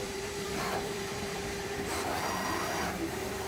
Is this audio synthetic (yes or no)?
yes